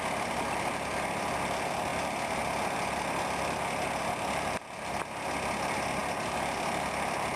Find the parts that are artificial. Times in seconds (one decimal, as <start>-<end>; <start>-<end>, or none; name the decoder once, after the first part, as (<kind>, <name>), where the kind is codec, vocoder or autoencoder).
none